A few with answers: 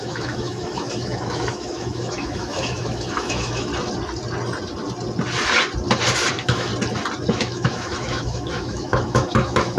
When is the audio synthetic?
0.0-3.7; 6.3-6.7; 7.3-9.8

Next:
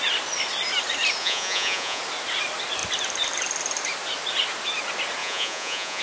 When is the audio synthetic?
1.2-2.0; 5.2-6.0

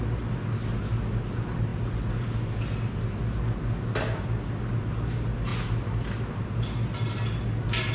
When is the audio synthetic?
none

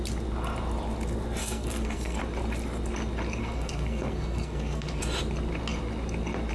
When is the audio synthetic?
1.4-2.2; 3.4-5.0